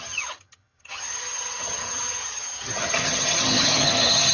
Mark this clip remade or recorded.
remade